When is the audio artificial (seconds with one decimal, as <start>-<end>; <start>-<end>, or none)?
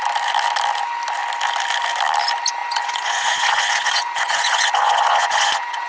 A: 2.6-5.9